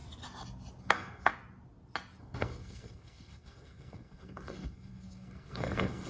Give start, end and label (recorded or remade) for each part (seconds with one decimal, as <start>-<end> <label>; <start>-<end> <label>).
0.0-0.8 recorded; 0.8-1.3 remade; 1.3-2.2 recorded; 2.2-6.1 remade